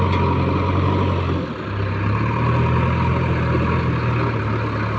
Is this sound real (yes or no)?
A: yes